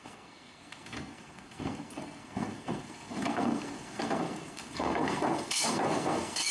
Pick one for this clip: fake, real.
fake